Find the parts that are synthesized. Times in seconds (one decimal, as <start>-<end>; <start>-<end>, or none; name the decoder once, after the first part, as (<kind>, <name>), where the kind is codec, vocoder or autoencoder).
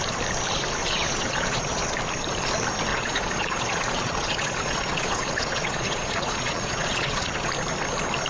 0.8-1.9 (vocoder, Vocos); 2.9-7.5